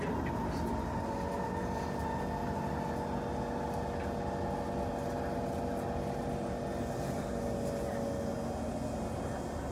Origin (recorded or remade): recorded